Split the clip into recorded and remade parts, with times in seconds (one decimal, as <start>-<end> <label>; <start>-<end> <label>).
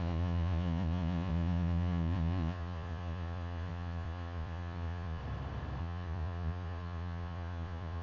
0.0-5.2 remade; 5.2-5.8 recorded; 5.8-8.0 remade